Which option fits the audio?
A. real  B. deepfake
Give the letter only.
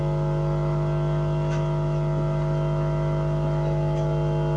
A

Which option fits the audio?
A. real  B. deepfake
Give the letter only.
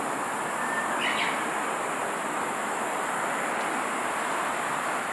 A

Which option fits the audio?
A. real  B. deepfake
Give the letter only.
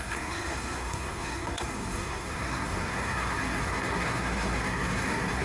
B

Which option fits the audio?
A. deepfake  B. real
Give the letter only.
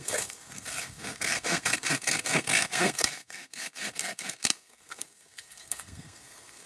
A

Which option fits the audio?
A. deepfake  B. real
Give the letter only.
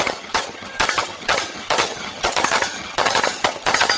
A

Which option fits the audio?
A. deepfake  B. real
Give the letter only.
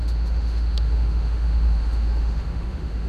A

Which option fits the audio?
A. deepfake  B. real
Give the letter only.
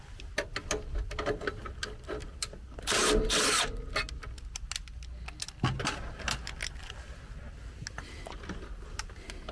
B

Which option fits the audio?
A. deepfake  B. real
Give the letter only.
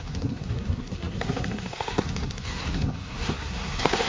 A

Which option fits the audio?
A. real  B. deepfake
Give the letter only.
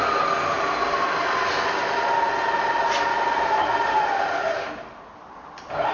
A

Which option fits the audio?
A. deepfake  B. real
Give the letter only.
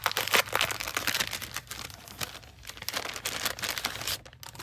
B